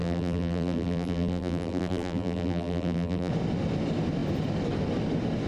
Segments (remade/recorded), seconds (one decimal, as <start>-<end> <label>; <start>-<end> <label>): 0.0-3.3 remade; 3.3-5.5 recorded

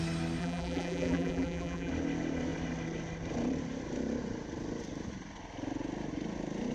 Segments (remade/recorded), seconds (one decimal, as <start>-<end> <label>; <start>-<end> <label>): 0.0-0.4 recorded; 0.4-1.9 remade; 1.9-6.7 recorded

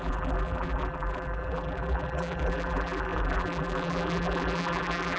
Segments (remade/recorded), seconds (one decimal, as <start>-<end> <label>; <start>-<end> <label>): 0.0-5.2 remade

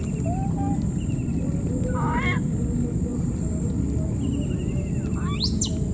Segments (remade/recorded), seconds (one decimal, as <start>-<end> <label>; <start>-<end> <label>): 0.0-3.1 recorded; 3.1-3.7 remade; 3.7-5.9 recorded

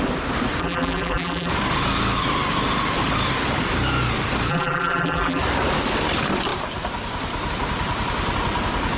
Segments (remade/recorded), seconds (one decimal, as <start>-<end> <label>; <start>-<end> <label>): 0.0-0.6 recorded; 0.6-1.5 remade; 1.5-4.5 recorded; 4.5-5.4 remade; 5.4-9.0 recorded